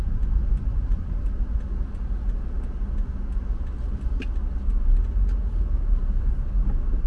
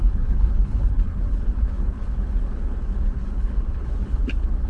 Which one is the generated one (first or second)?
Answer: second